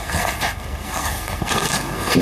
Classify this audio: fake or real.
fake